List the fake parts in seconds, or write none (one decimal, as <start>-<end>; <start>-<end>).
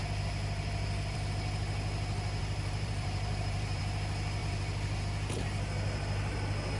2.4-3.8; 4.4-5.0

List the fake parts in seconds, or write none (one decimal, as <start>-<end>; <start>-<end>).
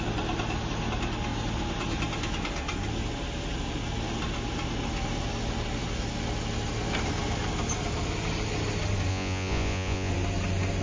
9.1-10.1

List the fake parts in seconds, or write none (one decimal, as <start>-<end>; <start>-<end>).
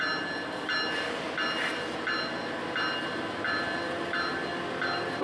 none